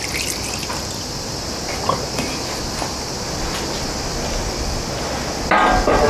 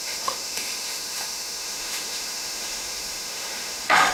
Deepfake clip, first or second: second